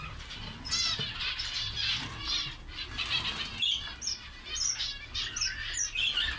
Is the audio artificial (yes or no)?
no